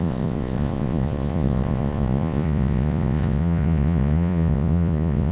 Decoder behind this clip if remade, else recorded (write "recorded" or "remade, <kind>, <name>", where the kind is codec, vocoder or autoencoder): remade, vocoder, Vocos